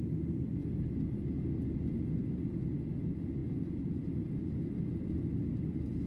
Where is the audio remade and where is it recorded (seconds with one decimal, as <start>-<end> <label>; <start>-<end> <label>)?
0.0-6.1 recorded